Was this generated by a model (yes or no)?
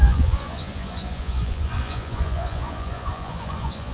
yes